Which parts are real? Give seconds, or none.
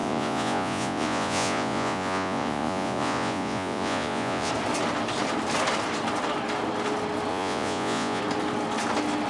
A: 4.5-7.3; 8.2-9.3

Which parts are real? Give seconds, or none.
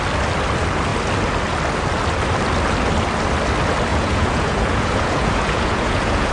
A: 0.0-3.9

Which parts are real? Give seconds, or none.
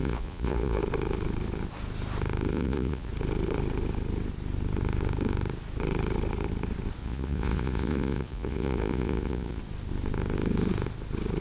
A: 0.8-2.5; 3.1-7.0; 9.6-11.4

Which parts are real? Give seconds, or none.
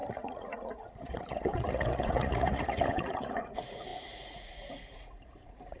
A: none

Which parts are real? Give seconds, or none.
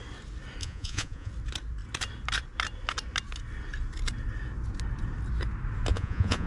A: 0.0-0.6; 1.3-5.9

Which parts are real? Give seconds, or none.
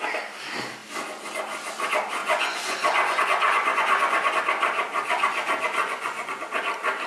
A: 0.0-2.2; 4.3-5.8; 6.4-7.1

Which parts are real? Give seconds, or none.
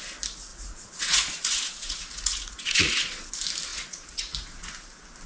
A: 0.0-0.5; 3.3-3.7; 4.7-5.3